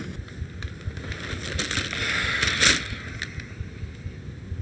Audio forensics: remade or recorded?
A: recorded